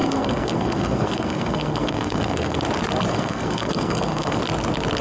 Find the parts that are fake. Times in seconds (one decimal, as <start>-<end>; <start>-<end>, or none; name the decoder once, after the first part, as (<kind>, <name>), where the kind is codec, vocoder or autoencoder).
0.0-2.6 (codec, SNAC); 3.1-4.4